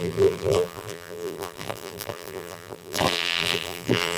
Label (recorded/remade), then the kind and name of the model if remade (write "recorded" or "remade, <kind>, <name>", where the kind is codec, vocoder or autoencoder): remade, vocoder, BigVGAN v2